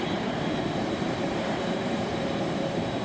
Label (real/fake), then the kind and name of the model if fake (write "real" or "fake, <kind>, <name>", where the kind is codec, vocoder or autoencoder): fake, vocoder, BigVGAN v2